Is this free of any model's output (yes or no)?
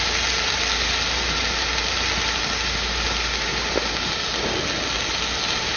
yes